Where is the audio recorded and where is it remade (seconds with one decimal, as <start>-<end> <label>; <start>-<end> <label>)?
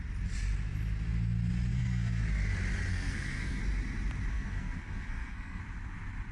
0.0-1.7 recorded; 1.7-2.2 remade; 2.2-2.9 recorded; 2.9-3.6 remade; 3.6-4.3 recorded; 4.3-5.6 remade; 5.6-6.3 recorded